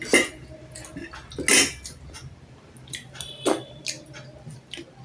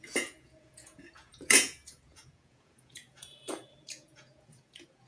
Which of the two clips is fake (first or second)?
second